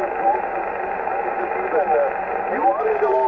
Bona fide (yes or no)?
yes